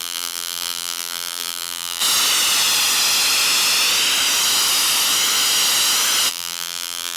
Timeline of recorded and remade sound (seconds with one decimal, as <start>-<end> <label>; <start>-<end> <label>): 0.0-2.0 remade; 2.0-6.3 recorded; 6.3-7.2 remade